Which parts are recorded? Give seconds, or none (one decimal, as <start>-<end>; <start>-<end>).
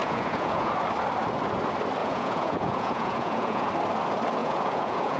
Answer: 0.7-2.0; 3.7-4.4